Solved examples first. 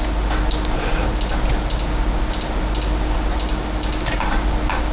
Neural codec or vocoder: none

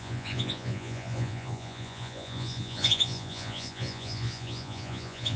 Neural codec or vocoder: vocoder, Vocos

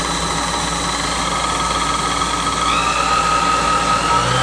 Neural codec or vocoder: none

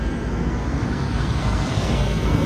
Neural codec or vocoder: codec, SNAC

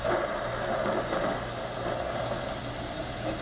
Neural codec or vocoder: none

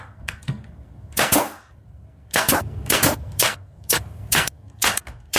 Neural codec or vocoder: codec, SNAC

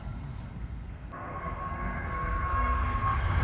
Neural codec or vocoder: codec, SNAC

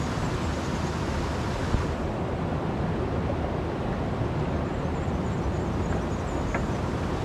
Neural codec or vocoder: none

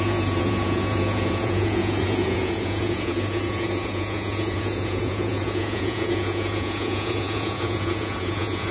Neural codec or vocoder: vocoder, Vocos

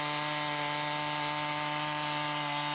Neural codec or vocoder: none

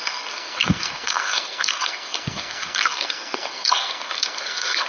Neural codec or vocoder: codec, SNAC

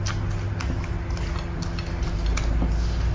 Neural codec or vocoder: none